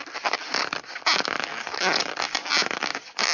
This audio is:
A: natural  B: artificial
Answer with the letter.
A